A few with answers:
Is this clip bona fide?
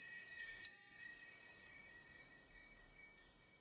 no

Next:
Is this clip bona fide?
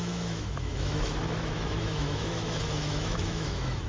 no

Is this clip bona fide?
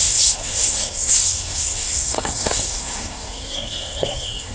no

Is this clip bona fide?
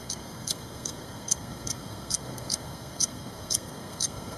no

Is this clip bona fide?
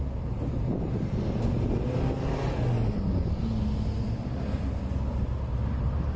yes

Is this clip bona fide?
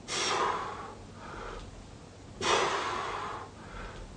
yes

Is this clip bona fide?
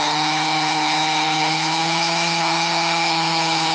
no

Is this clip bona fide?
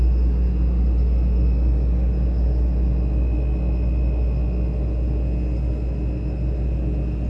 yes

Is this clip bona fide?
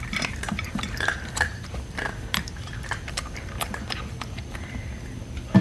no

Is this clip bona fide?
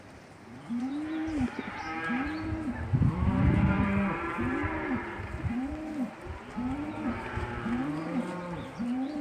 no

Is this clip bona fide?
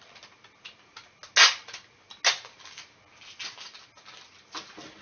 yes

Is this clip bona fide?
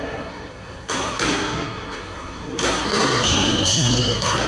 no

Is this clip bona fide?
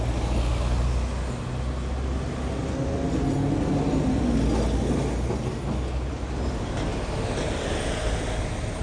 yes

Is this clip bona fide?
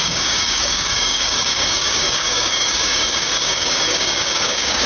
no